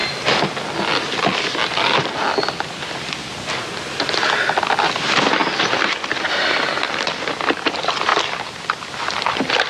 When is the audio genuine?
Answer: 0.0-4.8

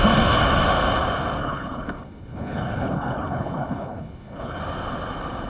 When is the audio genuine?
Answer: 0.0-1.4; 4.6-5.5

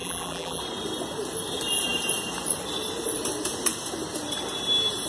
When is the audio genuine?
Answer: 0.6-5.1

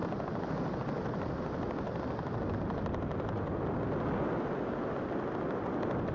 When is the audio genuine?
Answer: 0.0-6.1